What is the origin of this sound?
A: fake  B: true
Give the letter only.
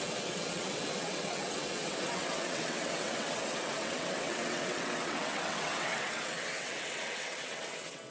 A